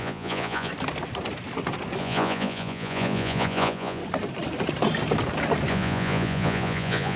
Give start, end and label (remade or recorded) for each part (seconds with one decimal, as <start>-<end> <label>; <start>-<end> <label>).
0.0-0.7 remade; 0.7-2.0 recorded; 2.0-4.0 remade; 4.0-5.7 recorded; 5.7-7.2 remade

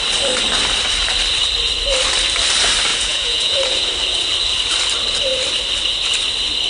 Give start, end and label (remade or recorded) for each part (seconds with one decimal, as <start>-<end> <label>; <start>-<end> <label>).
0.0-2.9 recorded; 2.9-3.9 remade; 3.9-6.7 recorded